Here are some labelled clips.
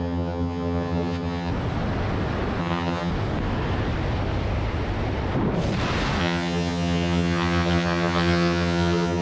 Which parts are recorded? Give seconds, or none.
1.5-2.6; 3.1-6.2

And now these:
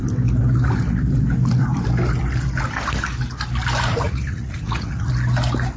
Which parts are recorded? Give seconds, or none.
0.0-3.9; 5.1-5.8

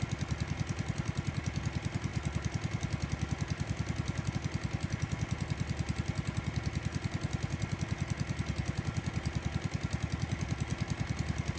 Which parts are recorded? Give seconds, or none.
0.0-11.6

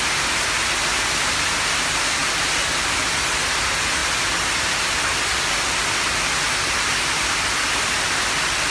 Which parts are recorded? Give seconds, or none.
0.0-8.7